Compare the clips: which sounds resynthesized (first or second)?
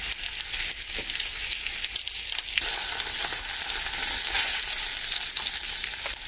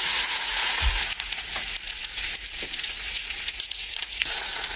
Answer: second